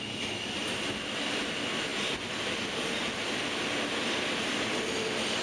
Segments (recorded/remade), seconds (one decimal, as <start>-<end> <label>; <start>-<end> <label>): 0.0-5.4 recorded